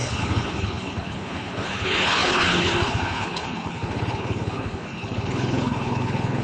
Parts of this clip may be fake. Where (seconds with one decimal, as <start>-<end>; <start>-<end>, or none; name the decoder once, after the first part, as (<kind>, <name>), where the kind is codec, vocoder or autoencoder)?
0.0-6.4 (codec, HILCodec)